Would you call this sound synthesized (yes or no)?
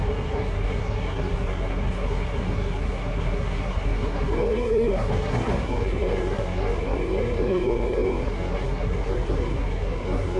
yes